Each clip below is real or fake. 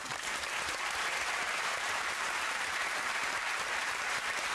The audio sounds fake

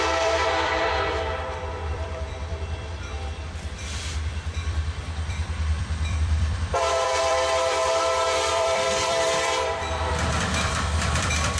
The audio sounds fake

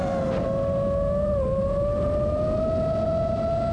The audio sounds real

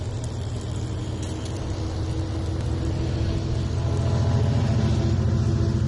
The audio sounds real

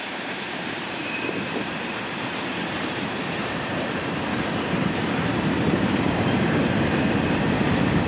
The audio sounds fake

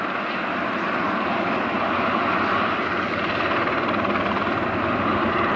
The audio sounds real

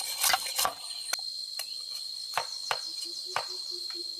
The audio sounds real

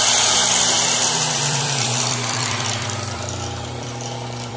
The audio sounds fake